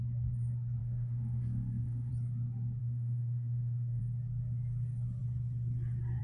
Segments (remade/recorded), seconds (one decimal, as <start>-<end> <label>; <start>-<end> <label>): 0.0-0.8 recorded; 0.8-2.1 remade; 2.1-2.8 recorded; 2.8-4.0 remade; 4.0-6.2 recorded